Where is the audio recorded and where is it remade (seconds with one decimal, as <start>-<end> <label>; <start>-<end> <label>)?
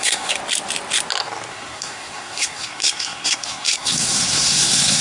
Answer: 0.0-0.4 remade; 0.4-1.5 recorded; 1.5-5.0 remade